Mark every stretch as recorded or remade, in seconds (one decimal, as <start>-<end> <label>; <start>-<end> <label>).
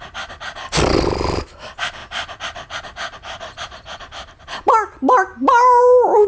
0.0-6.3 recorded